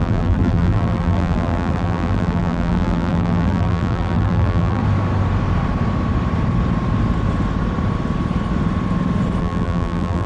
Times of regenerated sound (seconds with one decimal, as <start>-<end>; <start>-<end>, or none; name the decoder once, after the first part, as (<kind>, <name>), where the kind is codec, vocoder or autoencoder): 0.0-4.8 (vocoder, BigVGAN v2); 9.4-10.3